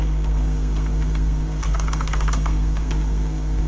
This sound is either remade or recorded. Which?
remade